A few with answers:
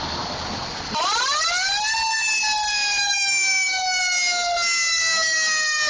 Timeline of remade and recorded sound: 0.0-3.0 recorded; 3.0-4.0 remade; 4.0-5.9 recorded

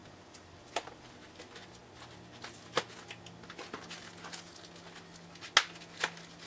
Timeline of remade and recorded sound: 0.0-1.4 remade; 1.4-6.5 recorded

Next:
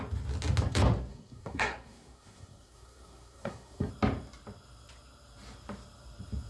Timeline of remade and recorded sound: 0.0-1.1 recorded; 1.1-3.9 remade; 3.9-6.5 recorded

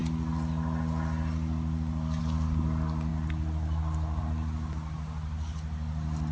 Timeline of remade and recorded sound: 0.0-6.3 recorded

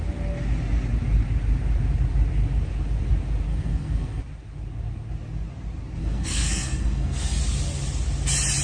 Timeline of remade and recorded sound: 0.0-3.5 recorded; 3.5-4.2 remade; 4.2-6.0 recorded; 6.0-7.4 remade; 7.4-8.6 recorded

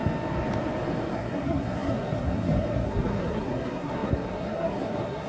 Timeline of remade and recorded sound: 0.0-1.1 recorded; 1.1-5.3 remade

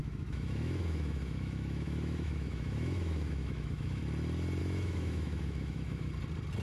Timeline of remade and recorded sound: 0.0-4.0 remade; 4.0-4.6 recorded; 4.6-6.1 remade; 6.1-6.6 recorded